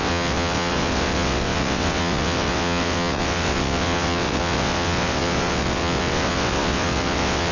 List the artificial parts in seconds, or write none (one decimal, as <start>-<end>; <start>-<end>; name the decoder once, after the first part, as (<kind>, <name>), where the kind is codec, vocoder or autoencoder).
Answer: 0.0-7.5 (vocoder, WaveNeXt)

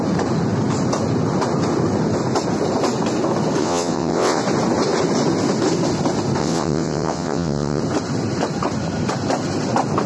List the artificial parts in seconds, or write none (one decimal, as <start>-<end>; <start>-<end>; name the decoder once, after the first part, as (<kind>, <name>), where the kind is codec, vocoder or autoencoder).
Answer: 3.6-4.4 (vocoder, WaveNeXt); 6.4-7.8

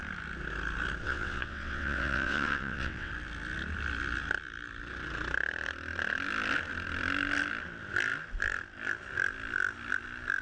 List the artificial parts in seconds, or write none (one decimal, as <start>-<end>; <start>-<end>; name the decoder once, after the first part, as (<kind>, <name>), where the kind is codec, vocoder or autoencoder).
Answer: 1.0-3.1 (vocoder, WaveNeXt)

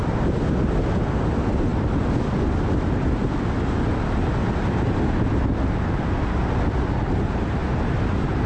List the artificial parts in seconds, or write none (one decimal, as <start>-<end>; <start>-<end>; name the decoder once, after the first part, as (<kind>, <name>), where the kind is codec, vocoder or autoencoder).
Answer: none

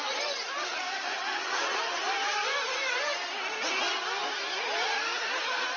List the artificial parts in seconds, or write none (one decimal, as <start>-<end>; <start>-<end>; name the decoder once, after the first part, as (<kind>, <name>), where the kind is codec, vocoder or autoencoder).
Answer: 0.7-1.8 (vocoder, WaveNeXt)

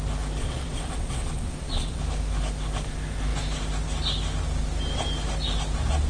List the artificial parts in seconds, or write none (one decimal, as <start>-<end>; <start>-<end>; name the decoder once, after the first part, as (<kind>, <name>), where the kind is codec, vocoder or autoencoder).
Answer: 0.4-2.0 (vocoder, WaveNeXt)